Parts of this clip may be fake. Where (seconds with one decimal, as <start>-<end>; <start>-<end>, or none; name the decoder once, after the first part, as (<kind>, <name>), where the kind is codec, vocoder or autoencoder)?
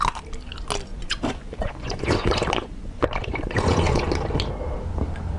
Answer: 0.9-4.1 (vocoder, Vocos)